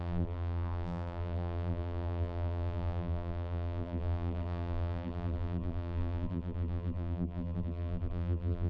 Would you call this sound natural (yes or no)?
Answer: no